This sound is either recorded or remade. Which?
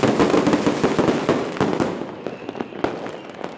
recorded